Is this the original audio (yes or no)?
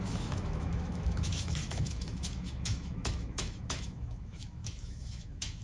no